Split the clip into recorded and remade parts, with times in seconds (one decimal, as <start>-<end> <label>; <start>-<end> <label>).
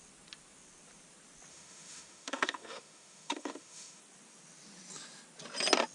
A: 0.0-1.5 recorded; 1.5-4.0 remade; 4.0-5.9 recorded